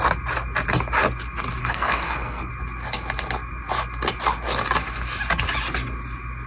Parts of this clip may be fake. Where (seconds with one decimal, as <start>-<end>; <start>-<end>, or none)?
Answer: 1.6-2.5